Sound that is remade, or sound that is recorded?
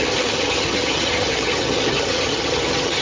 remade